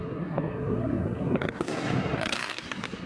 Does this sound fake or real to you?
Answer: fake